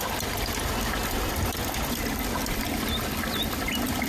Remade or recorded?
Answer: recorded